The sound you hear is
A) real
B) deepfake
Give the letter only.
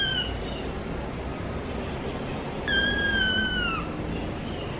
A